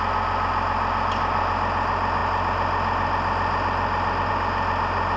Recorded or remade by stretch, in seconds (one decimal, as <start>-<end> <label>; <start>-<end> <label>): 0.0-5.2 recorded

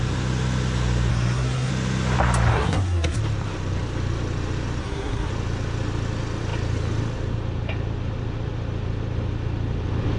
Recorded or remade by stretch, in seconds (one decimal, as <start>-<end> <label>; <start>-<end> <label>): 0.0-1.1 recorded; 1.1-1.7 remade; 1.7-2.5 recorded; 2.5-3.2 remade; 3.2-4.8 recorded; 4.8-5.3 remade; 5.3-10.2 recorded

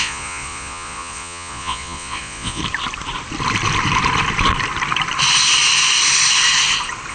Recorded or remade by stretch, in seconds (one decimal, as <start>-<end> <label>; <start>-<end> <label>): 0.0-2.6 remade; 2.6-7.1 recorded

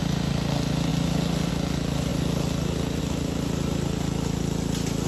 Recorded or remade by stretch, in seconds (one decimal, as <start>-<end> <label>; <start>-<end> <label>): 0.0-5.1 recorded